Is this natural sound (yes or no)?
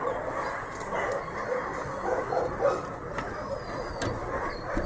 yes